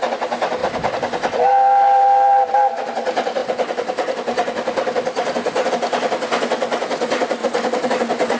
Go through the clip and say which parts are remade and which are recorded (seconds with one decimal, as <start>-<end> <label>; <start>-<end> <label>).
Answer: 0.0-8.4 recorded